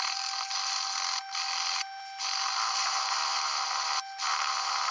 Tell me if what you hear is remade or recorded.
recorded